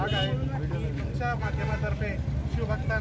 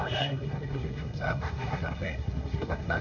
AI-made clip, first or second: second